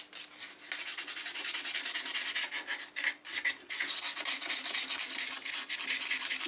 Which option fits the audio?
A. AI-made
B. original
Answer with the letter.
B